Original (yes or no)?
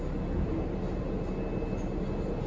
yes